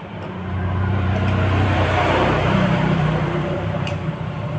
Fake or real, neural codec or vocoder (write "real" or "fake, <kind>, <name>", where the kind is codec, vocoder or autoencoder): fake, vocoder, BigVGAN v2